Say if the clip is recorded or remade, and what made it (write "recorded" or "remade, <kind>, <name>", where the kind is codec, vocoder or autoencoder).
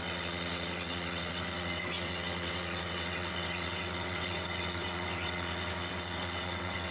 remade, vocoder, WaveNeXt